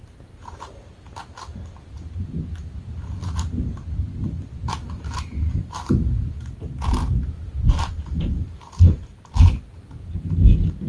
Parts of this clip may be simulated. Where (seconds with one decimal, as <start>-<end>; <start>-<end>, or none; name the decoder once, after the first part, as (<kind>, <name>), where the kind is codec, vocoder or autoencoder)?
4.6-6.3 (vocoder, BigVGAN v2); 7.0-9.3